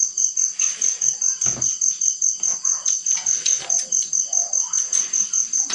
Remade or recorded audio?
recorded